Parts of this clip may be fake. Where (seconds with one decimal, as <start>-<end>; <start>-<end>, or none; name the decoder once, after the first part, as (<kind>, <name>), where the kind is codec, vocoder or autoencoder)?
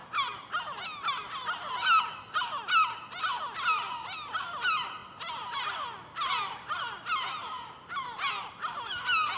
none